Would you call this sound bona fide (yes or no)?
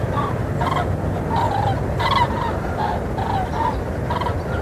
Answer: yes